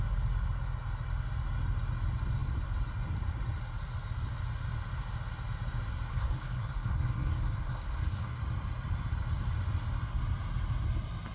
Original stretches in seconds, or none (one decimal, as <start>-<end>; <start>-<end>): 0.0-6.1; 8.4-11.3